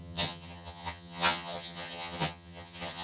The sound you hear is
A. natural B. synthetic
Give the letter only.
B